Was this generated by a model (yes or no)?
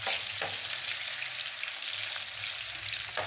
no